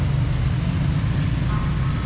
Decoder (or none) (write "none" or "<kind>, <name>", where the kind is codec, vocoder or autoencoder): none